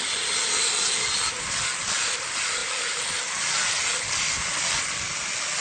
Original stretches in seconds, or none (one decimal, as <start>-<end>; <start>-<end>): 0.0-5.6